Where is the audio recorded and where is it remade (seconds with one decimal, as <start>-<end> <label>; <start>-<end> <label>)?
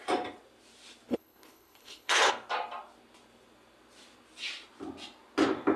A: 0.0-1.1 recorded; 1.1-2.3 remade; 2.3-5.8 recorded